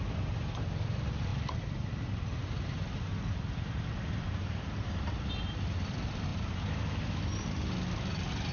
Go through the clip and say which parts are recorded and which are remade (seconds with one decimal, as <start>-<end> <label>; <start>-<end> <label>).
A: 0.0-8.5 recorded